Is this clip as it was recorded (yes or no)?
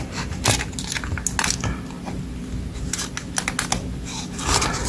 yes